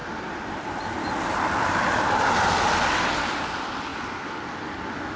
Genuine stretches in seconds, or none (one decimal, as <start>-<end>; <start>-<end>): 2.7-5.2